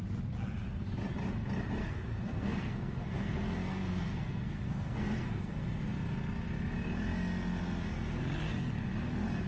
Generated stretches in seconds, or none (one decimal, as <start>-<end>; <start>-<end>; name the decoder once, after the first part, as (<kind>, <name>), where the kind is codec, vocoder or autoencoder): 1.8-5.8 (codec, SNAC)

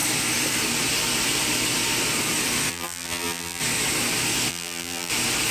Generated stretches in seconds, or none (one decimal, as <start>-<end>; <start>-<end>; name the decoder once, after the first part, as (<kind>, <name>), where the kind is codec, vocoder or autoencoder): 2.7-3.6 (vocoder, BigVGAN v2); 4.5-5.1

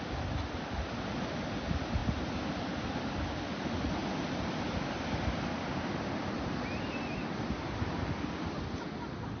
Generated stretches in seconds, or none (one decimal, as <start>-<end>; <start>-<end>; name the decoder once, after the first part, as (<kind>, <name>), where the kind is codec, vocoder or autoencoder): none

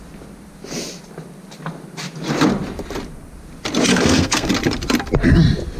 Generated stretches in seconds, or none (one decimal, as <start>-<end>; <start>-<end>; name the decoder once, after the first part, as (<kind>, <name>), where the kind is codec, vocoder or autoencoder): 3.9-4.5 (codec, SNAC)

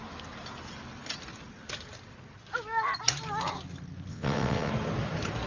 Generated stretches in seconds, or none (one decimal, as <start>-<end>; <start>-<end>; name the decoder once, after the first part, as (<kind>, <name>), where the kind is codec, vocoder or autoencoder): 4.1-4.7 (vocoder, WaveNeXt)

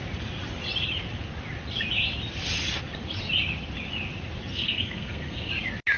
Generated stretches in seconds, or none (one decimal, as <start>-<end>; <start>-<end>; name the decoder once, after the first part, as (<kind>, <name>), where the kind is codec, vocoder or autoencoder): 4.5-5.5 (codec, SNAC)

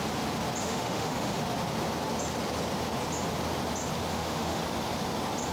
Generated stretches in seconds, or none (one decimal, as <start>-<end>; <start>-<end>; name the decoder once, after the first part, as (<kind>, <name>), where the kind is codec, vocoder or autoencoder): 0.6-1.4 (autoencoder, DAC-VAE); 4.1-4.6